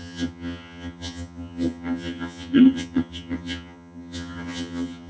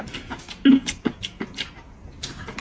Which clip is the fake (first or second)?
first